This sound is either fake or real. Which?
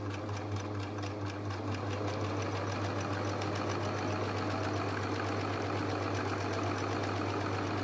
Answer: real